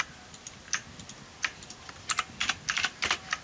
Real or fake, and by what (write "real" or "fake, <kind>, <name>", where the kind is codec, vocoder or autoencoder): real